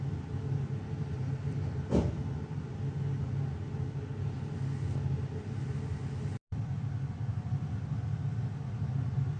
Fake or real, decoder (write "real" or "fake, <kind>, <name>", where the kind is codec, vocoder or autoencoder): real